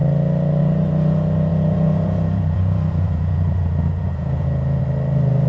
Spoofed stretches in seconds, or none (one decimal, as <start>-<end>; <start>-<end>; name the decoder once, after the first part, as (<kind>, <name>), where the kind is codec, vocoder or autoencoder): 1.5-4.8 (vocoder, Vocos)